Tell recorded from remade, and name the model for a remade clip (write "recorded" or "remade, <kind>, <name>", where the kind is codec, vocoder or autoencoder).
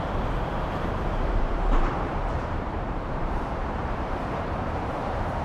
remade, vocoder, BigVGAN v2